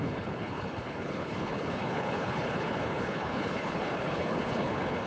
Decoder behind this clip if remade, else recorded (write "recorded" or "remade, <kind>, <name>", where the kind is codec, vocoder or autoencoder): remade, codec, HILCodec